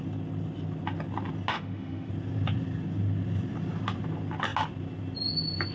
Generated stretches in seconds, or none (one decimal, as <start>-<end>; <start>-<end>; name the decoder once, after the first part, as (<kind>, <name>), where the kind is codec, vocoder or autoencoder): 1.5-2.1 (autoencoder, DAC-VAE)